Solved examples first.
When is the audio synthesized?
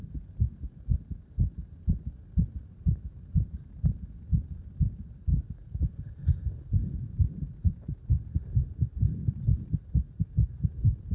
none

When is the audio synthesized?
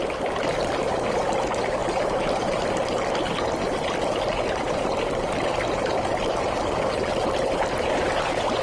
none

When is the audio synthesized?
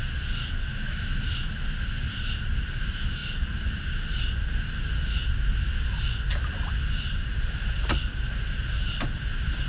0.7-1.6 (autoencoder, DAC-VAE)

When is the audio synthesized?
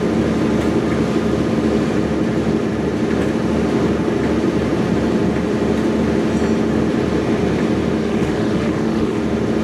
8.0-9.2 (autoencoder, DAC-VAE)